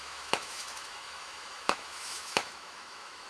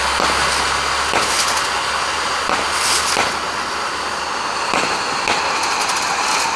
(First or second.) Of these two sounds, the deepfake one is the first